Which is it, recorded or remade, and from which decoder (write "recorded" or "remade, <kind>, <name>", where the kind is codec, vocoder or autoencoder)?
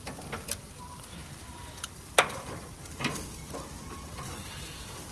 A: recorded